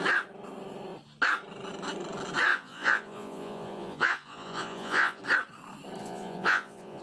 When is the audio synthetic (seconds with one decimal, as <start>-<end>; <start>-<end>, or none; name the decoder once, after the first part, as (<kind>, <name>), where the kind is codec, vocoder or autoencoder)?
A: 2.5-5.2 (vocoder, Vocos); 6.0-7.0